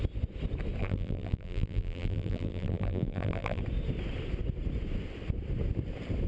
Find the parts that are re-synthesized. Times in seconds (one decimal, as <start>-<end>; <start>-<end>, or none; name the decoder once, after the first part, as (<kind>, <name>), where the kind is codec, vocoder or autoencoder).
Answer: 0.8-3.6 (vocoder, BigVGAN v2)